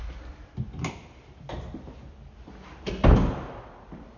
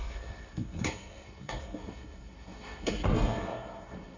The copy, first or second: second